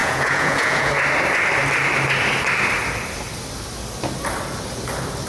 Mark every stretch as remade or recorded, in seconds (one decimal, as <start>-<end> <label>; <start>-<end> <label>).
0.0-0.9 remade; 0.9-5.3 recorded